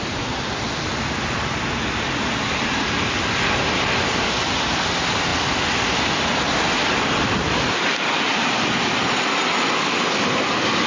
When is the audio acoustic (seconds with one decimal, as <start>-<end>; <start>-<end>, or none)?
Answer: 0.0-10.9